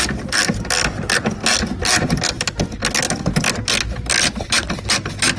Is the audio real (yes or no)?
yes